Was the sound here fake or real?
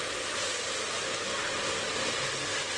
real